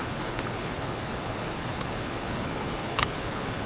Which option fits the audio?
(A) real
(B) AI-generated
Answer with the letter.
B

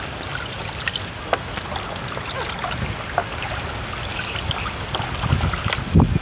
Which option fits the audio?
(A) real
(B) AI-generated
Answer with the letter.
A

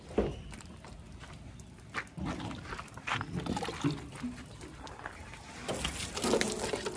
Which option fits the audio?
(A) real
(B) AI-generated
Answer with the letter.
A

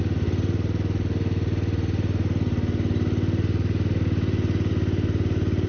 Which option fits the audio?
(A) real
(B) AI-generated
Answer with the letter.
A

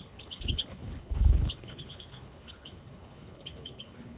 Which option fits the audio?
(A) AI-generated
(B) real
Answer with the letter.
A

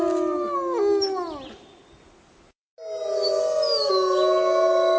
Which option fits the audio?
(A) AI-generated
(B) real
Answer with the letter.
B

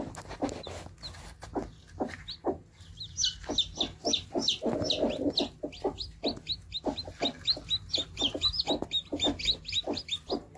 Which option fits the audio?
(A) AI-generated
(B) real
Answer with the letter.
B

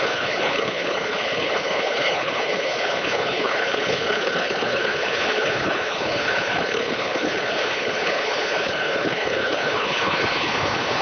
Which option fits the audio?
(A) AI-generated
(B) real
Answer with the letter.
A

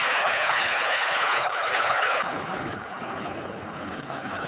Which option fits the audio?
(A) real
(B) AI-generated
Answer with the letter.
B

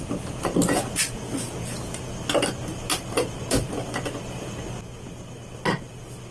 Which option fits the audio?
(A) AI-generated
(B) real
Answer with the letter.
B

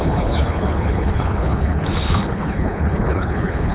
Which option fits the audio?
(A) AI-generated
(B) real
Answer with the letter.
A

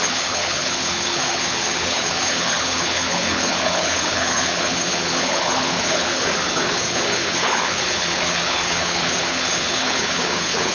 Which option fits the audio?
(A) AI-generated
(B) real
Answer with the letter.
A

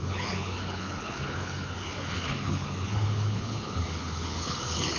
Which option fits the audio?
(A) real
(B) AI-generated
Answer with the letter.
B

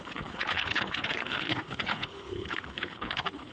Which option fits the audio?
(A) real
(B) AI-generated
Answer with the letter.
B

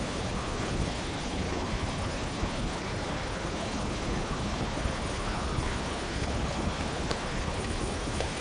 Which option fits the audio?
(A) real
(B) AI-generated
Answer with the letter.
B